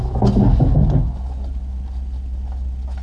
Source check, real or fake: real